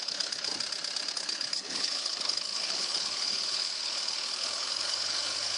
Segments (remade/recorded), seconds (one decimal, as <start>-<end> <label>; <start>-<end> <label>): 0.0-0.5 remade; 0.5-1.1 recorded; 1.1-5.6 remade